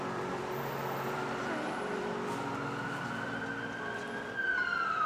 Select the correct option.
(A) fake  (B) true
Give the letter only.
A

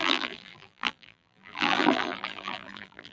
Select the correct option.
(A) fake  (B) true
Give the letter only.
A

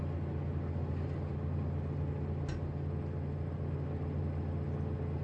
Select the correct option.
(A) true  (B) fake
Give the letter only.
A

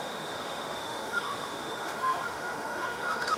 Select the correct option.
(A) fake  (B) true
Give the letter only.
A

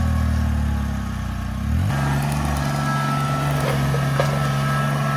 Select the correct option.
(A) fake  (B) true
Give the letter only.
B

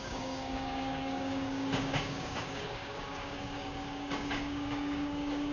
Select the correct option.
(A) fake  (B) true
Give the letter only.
A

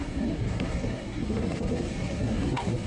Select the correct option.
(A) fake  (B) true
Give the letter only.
A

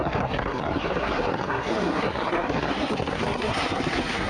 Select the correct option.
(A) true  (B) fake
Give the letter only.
B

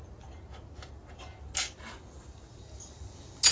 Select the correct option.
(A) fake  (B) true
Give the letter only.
B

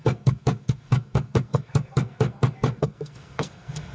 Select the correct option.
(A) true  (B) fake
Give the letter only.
B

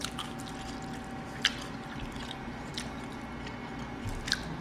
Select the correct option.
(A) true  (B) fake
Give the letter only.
A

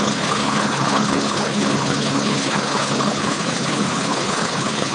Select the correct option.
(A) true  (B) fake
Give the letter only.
B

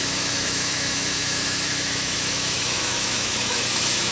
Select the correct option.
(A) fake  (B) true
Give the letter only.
A